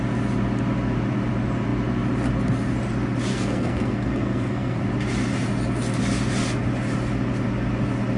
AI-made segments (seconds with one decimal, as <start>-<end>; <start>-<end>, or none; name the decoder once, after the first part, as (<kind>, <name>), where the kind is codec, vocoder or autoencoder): 3.3-4.8 (codec, SNAC)